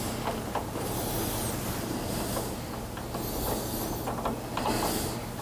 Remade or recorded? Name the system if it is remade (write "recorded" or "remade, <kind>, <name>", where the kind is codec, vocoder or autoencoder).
recorded